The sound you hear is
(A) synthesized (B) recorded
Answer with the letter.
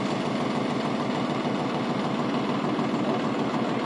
B